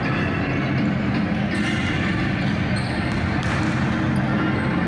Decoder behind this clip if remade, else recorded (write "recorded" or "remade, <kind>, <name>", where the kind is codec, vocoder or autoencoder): recorded